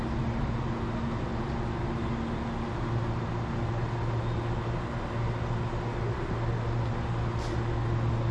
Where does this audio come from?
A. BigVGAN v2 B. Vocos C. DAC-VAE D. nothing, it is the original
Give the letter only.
D